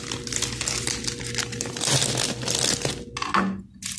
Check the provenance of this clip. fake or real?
real